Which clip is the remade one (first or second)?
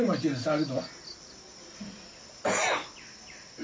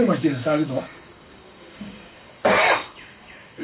second